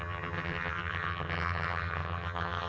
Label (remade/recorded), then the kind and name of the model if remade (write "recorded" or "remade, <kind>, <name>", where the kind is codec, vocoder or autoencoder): remade, vocoder, HiFi-GAN